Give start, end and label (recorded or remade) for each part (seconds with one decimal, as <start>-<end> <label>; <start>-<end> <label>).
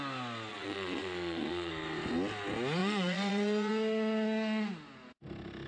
0.0-0.5 recorded; 0.5-1.7 remade; 1.7-2.8 recorded; 2.8-3.7 remade; 3.7-5.7 recorded